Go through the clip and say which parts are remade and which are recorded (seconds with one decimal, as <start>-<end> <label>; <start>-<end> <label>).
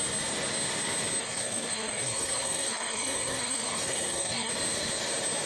0.0-1.2 recorded; 1.2-4.5 remade; 4.5-5.5 recorded